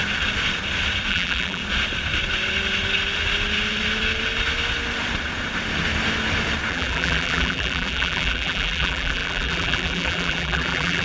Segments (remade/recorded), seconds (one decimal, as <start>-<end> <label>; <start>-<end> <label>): 0.0-1.1 recorded; 1.1-1.6 remade; 1.6-6.7 recorded; 6.7-11.0 remade